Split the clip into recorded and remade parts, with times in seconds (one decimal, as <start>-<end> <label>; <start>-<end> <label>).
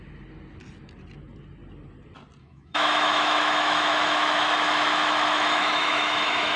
0.0-2.4 recorded; 2.4-6.6 remade